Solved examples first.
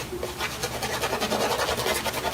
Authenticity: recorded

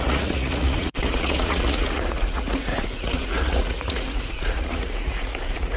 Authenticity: remade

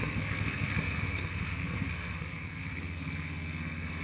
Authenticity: remade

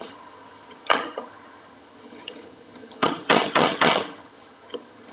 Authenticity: remade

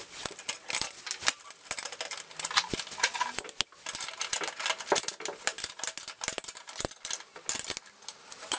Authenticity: recorded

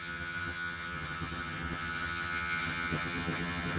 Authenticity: remade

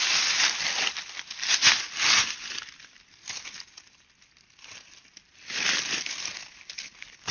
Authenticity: recorded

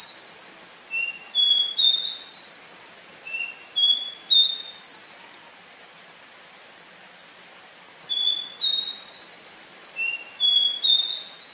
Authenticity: recorded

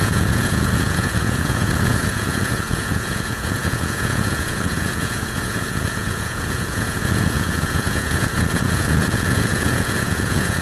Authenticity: remade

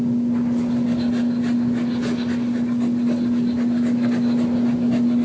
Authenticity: recorded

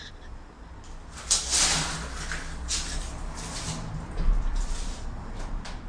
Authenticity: recorded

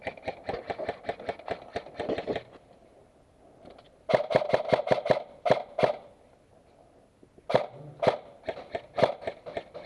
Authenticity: recorded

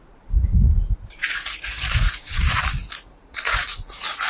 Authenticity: remade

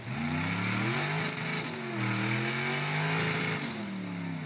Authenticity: recorded